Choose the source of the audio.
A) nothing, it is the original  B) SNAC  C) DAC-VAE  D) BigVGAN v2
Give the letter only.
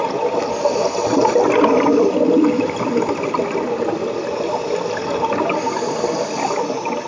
A